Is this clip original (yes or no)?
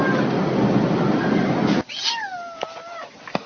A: yes